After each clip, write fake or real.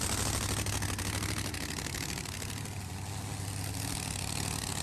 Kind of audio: real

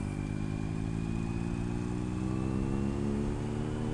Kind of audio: real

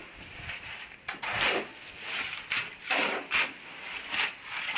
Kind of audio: real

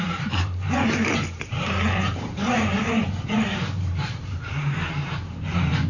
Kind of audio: fake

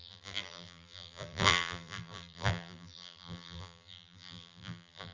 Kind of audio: fake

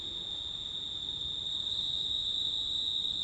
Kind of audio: real